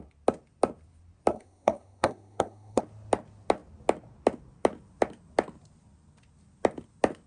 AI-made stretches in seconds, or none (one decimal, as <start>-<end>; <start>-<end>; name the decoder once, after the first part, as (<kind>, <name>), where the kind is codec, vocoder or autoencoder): 1.3-2.8 (codec, SNAC)